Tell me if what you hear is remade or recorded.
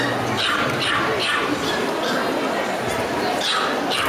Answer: recorded